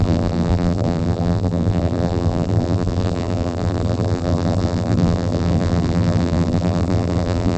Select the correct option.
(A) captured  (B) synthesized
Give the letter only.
B